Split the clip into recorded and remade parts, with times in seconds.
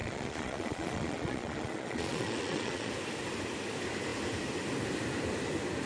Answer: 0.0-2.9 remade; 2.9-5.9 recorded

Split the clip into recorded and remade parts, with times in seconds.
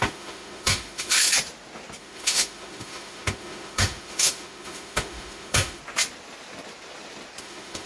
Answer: 0.0-1.3 remade; 1.3-2.0 recorded; 2.0-5.8 remade; 5.8-7.4 recorded; 7.4-7.9 remade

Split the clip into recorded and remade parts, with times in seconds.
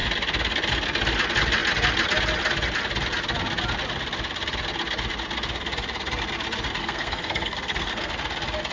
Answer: 0.0-6.8 recorded; 6.8-8.1 remade; 8.1-8.7 recorded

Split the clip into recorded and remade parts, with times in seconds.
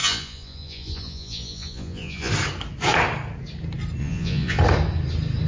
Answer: 0.0-2.3 remade; 2.3-4.0 recorded; 4.0-4.6 remade; 4.6-5.5 recorded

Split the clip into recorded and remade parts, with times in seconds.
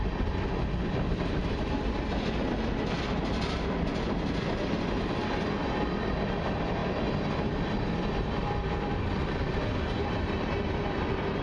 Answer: 0.0-11.4 recorded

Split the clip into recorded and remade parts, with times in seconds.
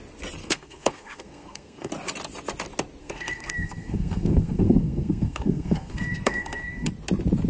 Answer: 0.0-0.4 recorded; 0.4-1.9 remade; 1.9-3.0 recorded; 3.0-6.9 remade; 6.9-7.5 recorded